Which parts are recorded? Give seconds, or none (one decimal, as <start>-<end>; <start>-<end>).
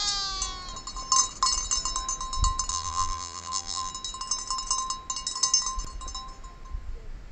0.0-2.7; 3.9-7.3